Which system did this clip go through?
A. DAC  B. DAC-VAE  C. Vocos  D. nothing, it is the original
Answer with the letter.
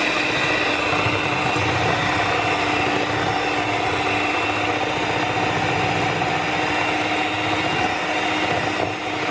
D